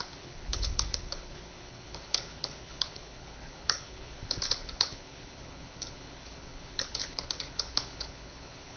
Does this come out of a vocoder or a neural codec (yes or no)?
yes